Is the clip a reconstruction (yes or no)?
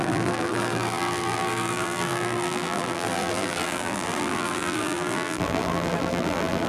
yes